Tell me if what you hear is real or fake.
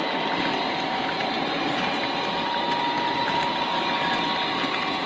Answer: real